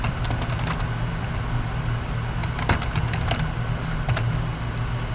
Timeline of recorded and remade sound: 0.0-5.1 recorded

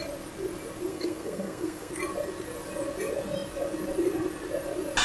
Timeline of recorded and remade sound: 0.0-0.9 recorded; 0.9-1.9 remade; 1.9-5.0 recorded

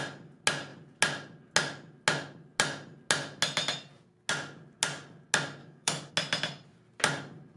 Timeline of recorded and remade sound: 0.0-5.6 recorded; 5.6-6.1 remade; 6.1-7.6 recorded

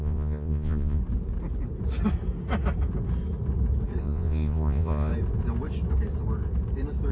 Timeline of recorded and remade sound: 0.0-1.0 remade; 1.0-4.0 recorded; 4.0-5.1 remade; 5.1-7.1 recorded